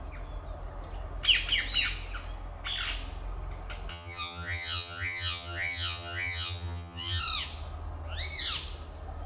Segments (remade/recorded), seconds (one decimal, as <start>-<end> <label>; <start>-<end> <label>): 0.0-3.9 recorded; 3.9-7.2 remade; 7.2-9.3 recorded